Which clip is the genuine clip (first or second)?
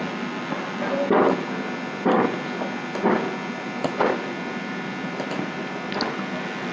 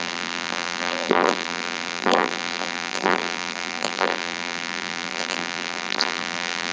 first